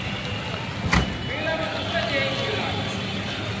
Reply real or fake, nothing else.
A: real